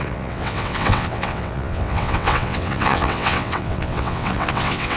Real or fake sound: fake